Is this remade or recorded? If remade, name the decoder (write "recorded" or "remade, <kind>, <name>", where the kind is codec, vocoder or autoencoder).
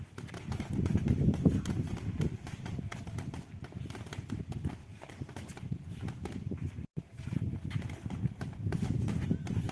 remade, vocoder, BigVGAN v2